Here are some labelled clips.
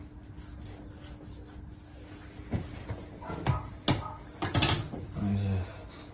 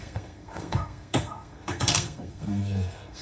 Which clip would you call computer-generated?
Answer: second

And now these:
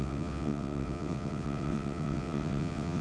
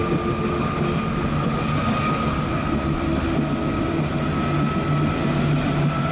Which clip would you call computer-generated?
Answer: first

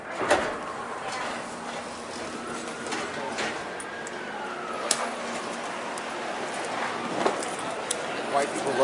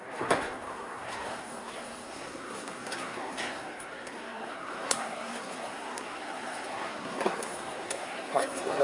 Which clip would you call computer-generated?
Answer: second